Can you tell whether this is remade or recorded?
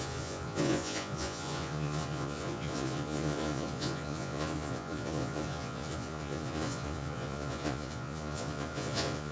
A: remade